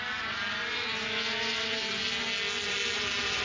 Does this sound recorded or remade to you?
recorded